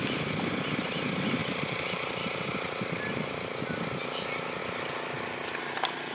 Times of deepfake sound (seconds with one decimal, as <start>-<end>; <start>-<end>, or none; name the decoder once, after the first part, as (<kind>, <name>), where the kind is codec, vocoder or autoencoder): 1.4-3.6 (vocoder, BigVGAN v2)

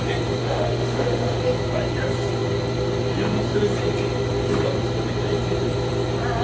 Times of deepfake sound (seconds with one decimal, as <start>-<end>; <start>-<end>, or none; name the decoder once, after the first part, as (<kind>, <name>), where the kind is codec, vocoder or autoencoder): 0.4-1.4 (autoencoder, DAC-VAE)

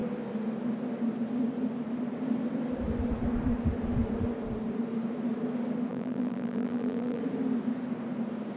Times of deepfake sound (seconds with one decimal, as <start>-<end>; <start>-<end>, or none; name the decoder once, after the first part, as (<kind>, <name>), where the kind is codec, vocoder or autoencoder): 5.9-7.2 (vocoder, BigVGAN v2)

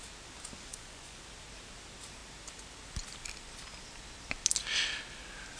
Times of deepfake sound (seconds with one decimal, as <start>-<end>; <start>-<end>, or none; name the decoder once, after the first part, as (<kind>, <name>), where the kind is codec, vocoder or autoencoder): 0.7-1.2 (vocoder, Vocos)